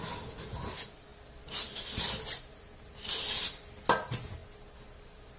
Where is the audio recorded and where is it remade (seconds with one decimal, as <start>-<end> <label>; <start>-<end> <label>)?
0.0-5.4 recorded